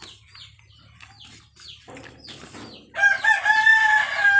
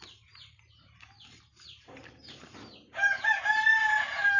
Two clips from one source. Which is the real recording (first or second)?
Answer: first